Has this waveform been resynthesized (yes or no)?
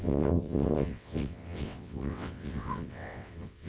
yes